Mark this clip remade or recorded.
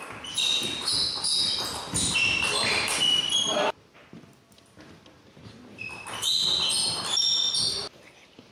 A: recorded